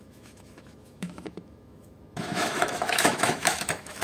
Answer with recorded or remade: remade